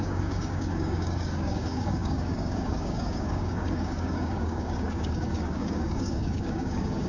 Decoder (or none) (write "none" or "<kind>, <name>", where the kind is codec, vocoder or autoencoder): codec, DAC